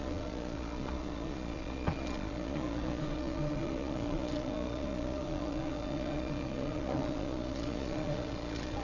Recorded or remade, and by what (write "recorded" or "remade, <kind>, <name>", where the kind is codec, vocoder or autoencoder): remade, vocoder, Vocos